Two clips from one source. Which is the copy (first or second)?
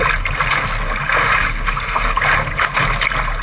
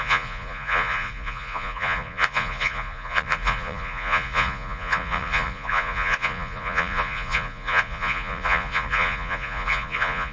second